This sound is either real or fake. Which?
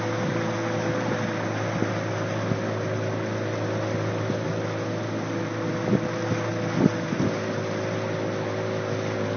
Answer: real